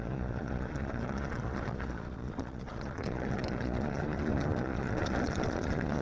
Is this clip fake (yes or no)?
yes